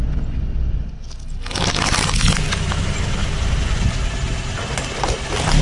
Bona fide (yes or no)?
yes